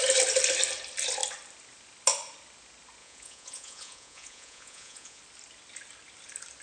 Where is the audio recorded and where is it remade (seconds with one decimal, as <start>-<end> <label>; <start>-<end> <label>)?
0.0-3.0 recorded; 3.0-5.2 remade; 5.2-6.6 recorded

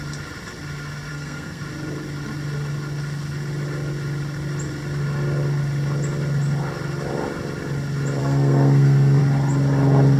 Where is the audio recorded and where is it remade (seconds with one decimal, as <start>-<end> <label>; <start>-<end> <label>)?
0.0-1.1 recorded; 1.1-1.6 remade; 1.6-8.2 recorded; 8.2-9.2 remade; 9.2-10.2 recorded

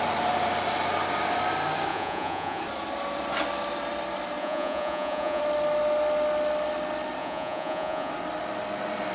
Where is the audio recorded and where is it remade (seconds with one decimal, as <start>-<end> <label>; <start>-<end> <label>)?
0.0-1.9 recorded; 1.9-2.6 remade; 2.6-4.4 recorded; 4.4-5.4 remade; 5.4-7.2 recorded; 7.2-8.1 remade; 8.1-9.1 recorded

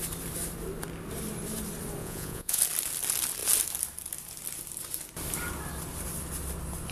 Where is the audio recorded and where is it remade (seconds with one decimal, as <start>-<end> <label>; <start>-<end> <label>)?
0.0-2.0 recorded; 2.0-2.6 remade; 2.6-6.9 recorded

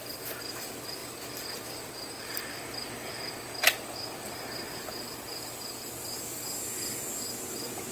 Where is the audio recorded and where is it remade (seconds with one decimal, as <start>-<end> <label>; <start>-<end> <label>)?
0.0-1.0 recorded; 1.0-1.9 remade; 1.9-7.9 recorded